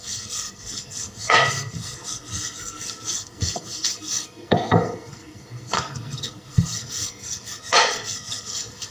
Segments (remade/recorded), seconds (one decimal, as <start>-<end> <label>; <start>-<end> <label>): 0.0-8.9 remade